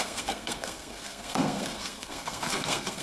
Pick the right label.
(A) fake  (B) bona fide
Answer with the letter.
A